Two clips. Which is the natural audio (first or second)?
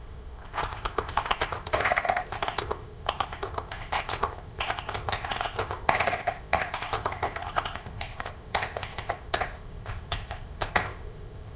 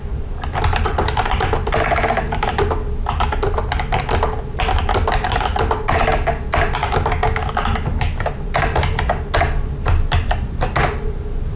second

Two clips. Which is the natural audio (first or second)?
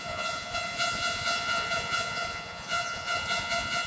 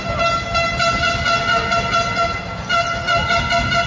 second